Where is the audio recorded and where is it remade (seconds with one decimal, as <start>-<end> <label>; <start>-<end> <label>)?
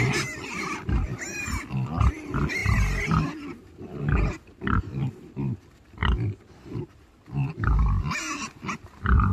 0.0-9.3 recorded